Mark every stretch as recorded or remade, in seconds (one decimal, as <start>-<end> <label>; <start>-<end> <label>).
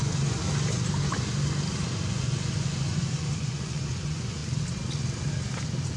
0.0-0.4 remade; 0.4-2.1 recorded; 2.1-4.4 remade; 4.4-6.0 recorded